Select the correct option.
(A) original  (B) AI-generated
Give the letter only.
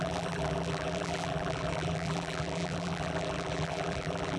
B